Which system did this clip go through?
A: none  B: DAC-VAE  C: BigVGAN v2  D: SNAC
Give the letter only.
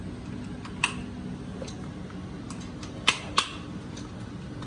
A